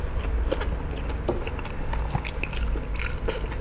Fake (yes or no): no